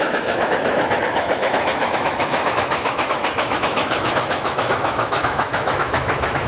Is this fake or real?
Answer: fake